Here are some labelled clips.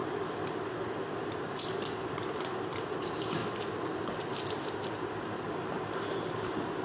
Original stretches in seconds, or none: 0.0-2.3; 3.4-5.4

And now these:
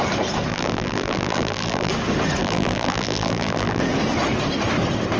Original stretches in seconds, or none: 0.0-0.5; 1.9-2.4; 3.8-5.2

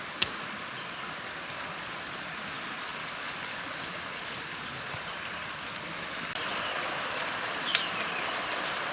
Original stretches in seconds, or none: 0.0-8.9

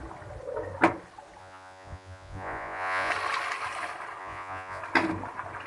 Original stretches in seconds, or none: 0.0-1.4; 3.1-4.2; 4.8-5.7

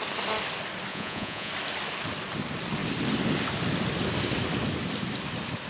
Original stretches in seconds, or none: 0.0-0.9; 1.5-5.7

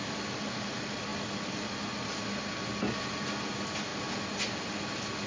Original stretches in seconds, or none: 0.0-5.3

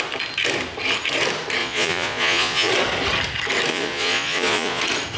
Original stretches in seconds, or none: 0.0-1.6; 2.7-3.7; 4.8-5.2

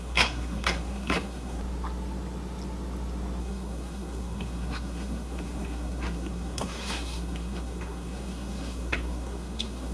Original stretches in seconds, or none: 1.6-3.4